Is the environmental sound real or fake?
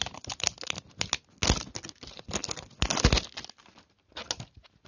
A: real